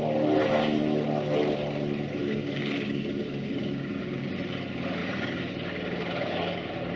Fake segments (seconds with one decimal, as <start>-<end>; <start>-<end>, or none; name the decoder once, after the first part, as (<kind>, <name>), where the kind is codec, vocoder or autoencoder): 2.2-4.3 (codec, DAC); 5.0-5.5